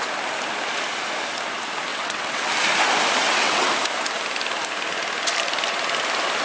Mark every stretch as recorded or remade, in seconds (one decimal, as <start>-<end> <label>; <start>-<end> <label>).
0.0-1.9 recorded; 1.9-2.5 remade; 2.5-3.2 recorded; 3.2-3.7 remade; 3.7-6.4 recorded